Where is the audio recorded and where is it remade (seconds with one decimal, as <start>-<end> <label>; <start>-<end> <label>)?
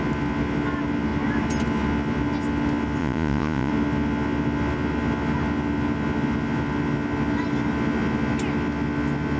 0.0-3.0 recorded; 3.0-3.7 remade; 3.7-9.4 recorded